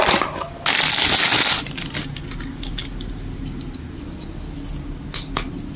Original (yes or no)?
yes